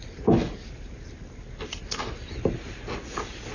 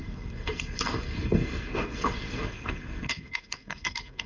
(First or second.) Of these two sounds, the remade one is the second